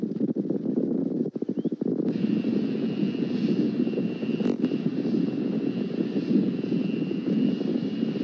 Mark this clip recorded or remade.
recorded